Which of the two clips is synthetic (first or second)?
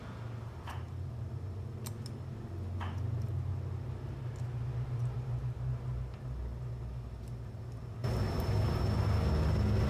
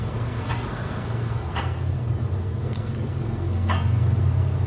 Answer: second